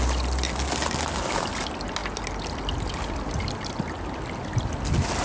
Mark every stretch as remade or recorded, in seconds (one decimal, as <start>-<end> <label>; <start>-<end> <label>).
0.0-5.2 recorded